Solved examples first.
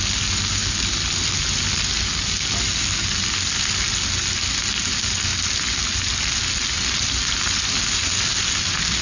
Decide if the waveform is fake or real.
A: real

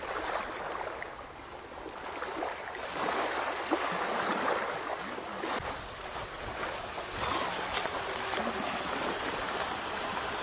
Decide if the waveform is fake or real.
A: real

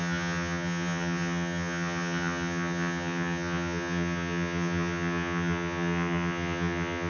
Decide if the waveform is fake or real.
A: fake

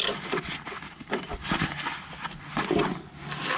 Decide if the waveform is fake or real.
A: real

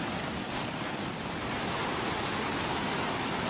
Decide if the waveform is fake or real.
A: real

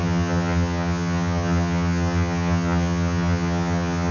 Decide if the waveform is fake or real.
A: fake